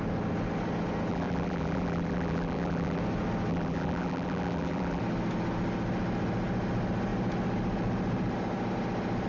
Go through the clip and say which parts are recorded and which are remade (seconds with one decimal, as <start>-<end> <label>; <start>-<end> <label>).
0.0-1.1 recorded; 1.1-3.0 remade; 3.0-3.5 recorded; 3.5-5.0 remade; 5.0-9.3 recorded